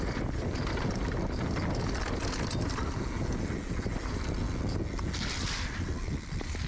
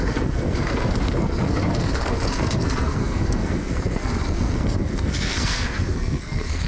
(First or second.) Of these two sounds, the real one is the first